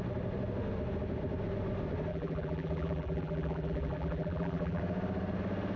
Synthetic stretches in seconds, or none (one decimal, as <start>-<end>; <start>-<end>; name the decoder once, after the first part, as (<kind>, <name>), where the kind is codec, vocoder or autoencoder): 2.1-4.8 (vocoder, BigVGAN v2)